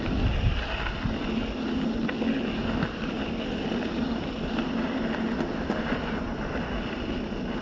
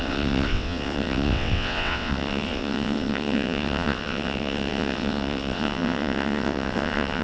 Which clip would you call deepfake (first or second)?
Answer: second